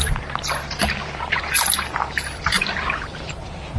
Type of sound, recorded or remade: remade